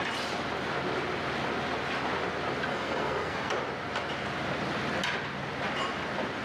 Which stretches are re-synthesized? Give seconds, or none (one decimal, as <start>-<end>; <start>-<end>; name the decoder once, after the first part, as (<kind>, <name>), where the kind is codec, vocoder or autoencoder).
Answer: 2.7-3.5 (codec, SNAC)